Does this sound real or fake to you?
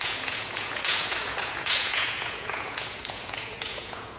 fake